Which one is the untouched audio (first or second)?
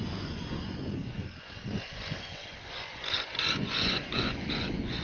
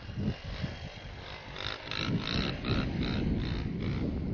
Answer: second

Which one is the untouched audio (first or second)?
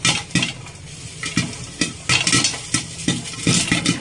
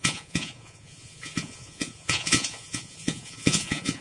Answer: first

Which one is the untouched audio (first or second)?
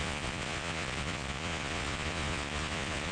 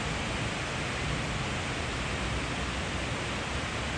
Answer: second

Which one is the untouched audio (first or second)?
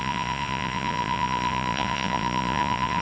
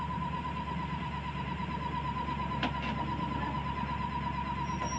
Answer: second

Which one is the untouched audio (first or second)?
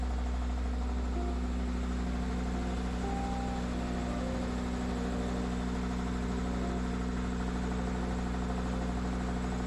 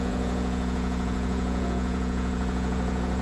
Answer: first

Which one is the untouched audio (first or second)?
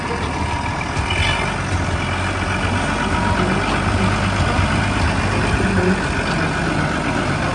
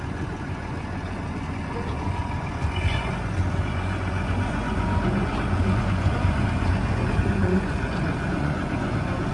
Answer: first